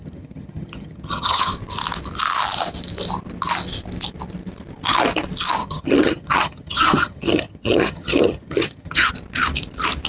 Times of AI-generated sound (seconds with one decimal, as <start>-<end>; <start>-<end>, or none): 0.0-1.5; 5.6-9.1